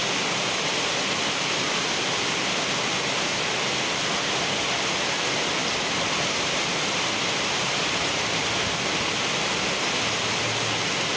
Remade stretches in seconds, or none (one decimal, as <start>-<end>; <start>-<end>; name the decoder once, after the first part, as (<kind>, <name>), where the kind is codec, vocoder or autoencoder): none